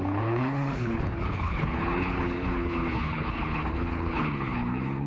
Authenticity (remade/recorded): remade